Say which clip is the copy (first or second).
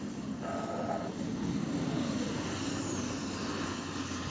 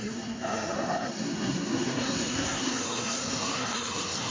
second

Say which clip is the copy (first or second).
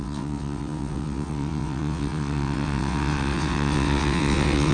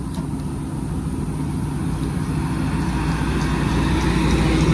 first